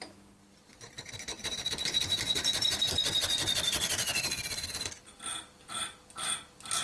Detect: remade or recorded recorded